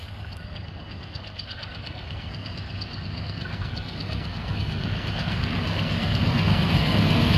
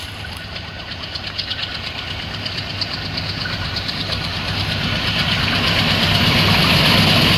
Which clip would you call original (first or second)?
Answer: second